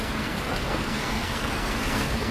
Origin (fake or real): fake